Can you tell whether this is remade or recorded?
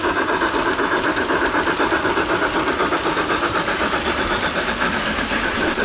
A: recorded